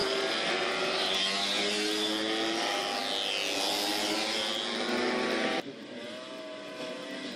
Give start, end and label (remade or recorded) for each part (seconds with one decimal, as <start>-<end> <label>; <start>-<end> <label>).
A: 0.0-7.4 recorded